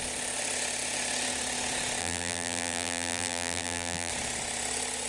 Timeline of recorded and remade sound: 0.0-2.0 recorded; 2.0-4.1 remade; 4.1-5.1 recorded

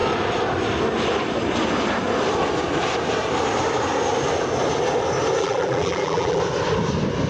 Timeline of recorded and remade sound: 0.0-5.4 recorded; 5.4-6.4 remade; 6.4-7.3 recorded

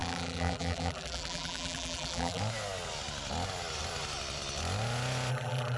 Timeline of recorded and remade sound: 0.0-2.4 remade; 2.4-5.3 recorded; 5.3-5.8 remade

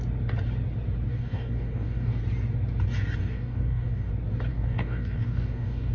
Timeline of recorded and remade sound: 0.0-1.1 recorded; 1.1-2.2 remade; 2.2-3.2 recorded; 3.2-4.1 remade; 4.1-4.5 recorded; 4.5-5.9 remade

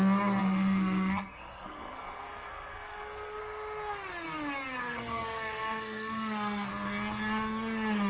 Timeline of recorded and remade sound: 0.0-0.4 recorded; 0.4-3.4 remade; 3.4-4.8 recorded; 4.8-6.7 remade; 6.7-8.1 recorded

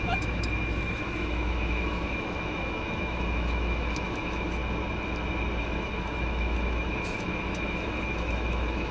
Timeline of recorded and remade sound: 0.0-4.6 remade; 4.6-5.6 recorded; 5.6-8.9 remade

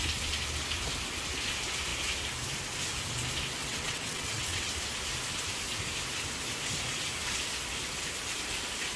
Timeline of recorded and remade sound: 0.0-3.6 recorded; 3.6-4.7 remade; 4.7-9.0 recorded